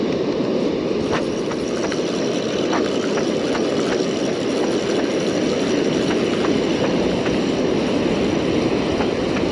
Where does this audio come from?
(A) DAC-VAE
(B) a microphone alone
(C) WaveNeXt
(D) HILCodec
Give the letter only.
B